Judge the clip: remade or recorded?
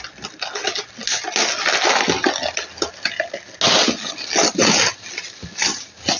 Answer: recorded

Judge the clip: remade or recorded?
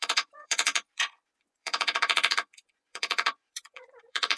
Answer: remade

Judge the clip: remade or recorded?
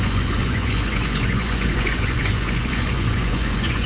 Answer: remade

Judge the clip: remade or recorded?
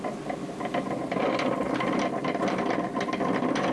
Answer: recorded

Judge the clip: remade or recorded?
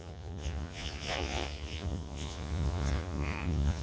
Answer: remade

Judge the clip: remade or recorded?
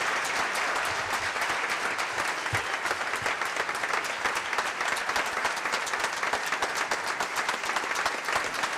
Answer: recorded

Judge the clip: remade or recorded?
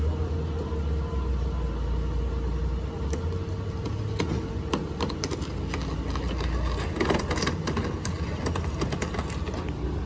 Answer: recorded